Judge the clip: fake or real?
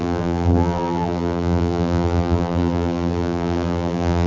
fake